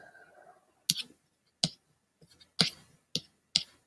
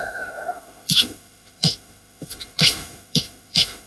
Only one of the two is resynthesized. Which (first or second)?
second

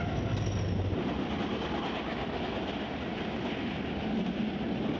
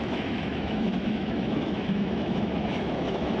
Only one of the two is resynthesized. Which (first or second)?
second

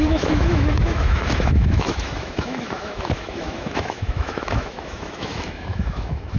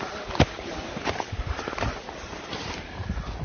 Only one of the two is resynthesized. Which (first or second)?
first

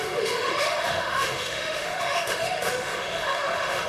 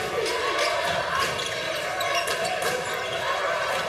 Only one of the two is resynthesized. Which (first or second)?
first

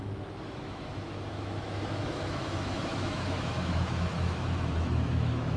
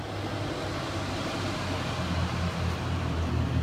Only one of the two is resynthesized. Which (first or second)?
first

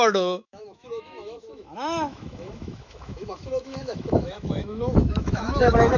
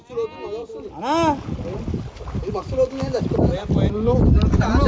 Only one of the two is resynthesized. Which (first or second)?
first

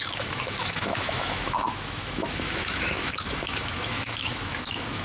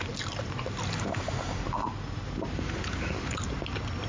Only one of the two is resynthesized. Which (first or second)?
first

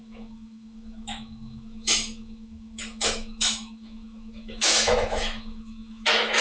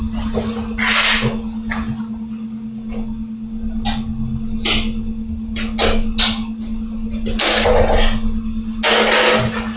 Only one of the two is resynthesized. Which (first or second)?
first